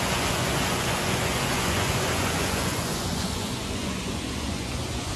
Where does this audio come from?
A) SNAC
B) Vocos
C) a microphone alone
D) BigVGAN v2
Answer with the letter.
B